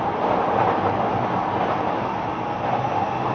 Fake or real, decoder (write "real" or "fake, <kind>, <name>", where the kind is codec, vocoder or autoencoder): real